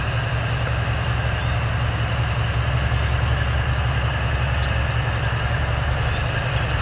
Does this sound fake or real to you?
real